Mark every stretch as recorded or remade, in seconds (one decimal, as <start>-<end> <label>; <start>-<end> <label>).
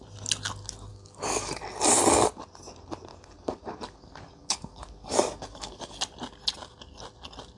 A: 0.0-0.9 recorded; 0.9-1.6 remade; 1.6-3.1 recorded; 3.1-6.0 remade; 6.0-7.6 recorded